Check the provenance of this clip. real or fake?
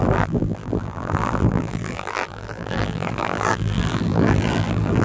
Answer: fake